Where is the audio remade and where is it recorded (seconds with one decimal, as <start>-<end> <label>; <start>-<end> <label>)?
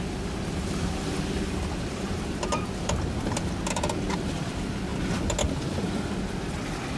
0.0-4.9 remade; 4.9-5.7 recorded; 5.7-7.0 remade